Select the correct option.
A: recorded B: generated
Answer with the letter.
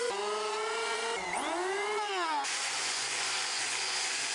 B